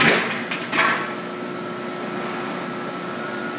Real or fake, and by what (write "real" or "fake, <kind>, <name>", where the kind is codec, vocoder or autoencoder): real